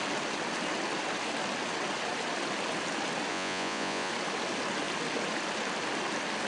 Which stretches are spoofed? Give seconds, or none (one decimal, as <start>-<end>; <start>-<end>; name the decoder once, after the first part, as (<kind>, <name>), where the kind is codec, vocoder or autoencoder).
3.3-4.1 (vocoder, Vocos)